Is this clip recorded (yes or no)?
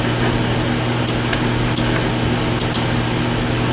yes